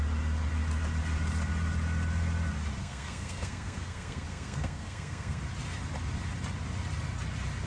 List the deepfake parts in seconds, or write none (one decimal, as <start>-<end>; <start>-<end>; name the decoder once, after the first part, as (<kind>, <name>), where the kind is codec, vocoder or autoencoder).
2.8-5.4 (codec, SNAC)